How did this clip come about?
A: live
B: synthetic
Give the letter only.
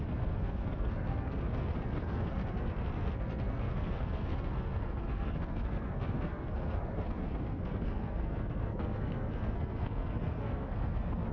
B